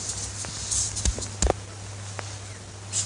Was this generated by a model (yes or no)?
no